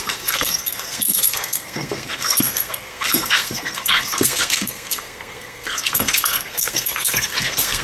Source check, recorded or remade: remade